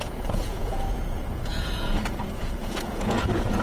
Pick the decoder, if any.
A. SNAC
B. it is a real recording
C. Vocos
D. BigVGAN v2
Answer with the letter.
C